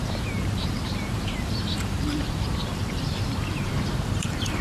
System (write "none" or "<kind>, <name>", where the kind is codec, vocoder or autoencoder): vocoder, BigVGAN v2